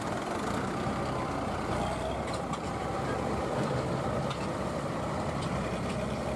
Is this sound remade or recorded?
remade